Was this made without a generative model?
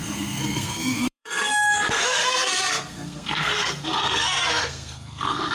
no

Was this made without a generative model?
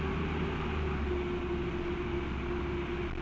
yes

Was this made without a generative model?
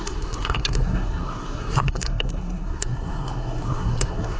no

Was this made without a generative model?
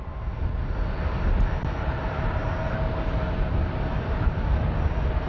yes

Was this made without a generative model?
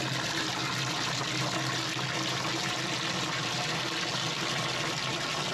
yes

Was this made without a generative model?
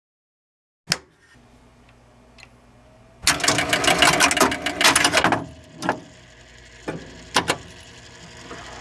yes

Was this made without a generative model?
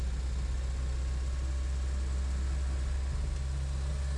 yes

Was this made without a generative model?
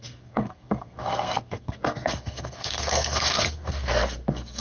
no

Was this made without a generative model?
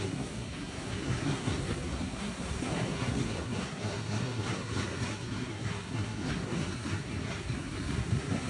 no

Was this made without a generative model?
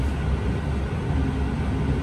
yes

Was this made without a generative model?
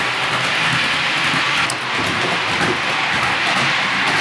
yes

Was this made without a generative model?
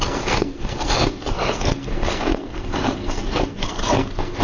no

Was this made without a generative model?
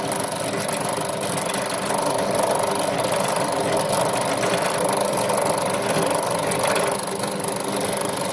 yes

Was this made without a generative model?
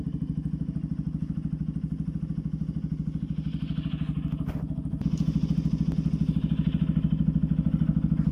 yes